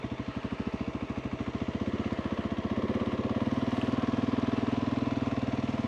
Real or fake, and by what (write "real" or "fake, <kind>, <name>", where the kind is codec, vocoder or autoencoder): real